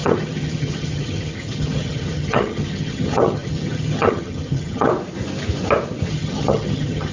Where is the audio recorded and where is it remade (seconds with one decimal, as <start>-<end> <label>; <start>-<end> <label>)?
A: 0.0-4.9 remade; 4.9-6.1 recorded; 6.1-7.1 remade